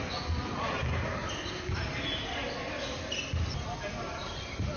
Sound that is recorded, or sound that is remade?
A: recorded